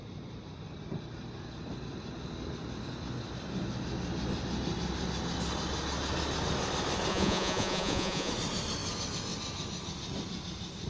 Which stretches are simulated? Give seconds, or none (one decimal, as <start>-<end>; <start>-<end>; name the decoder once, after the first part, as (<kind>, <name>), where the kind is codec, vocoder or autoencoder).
7.1-8.3 (vocoder, Vocos)